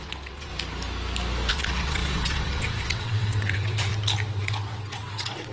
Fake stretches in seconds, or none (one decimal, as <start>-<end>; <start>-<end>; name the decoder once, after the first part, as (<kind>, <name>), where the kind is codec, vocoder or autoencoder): 0.0-0.5 (vocoder, WaveNeXt); 1.5-3.9; 4.4-5.5